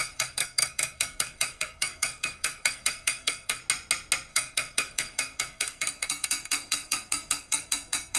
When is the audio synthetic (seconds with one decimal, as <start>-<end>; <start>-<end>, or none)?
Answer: 0.0-3.6; 4.3-8.2